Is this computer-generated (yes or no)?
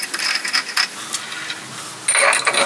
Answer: no